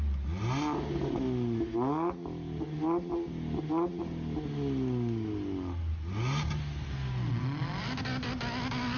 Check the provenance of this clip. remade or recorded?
recorded